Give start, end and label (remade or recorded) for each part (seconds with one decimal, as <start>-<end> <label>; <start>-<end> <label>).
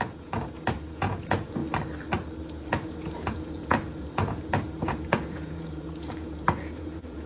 0.0-1.6 remade; 1.6-2.7 recorded; 2.7-7.3 remade